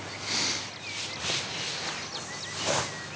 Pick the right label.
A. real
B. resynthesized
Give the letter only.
A